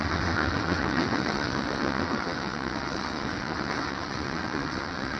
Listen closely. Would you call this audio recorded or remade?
remade